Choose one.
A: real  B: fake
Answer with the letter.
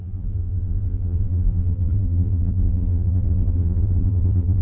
B